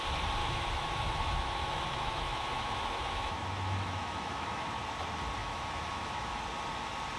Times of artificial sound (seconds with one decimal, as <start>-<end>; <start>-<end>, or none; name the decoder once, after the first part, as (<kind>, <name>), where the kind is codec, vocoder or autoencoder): 0.4-4.7 (autoencoder, DAC-VAE); 5.4-6.4